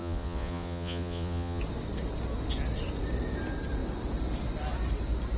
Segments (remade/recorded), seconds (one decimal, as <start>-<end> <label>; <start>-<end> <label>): 0.0-1.6 remade; 1.6-5.4 recorded